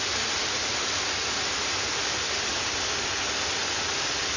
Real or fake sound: real